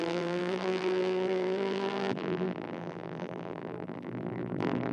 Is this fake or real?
fake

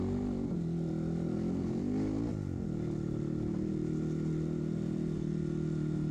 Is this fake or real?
real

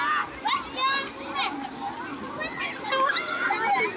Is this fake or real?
real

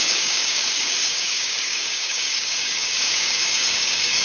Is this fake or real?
fake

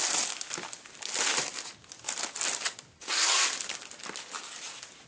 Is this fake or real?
real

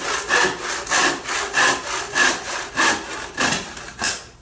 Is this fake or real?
real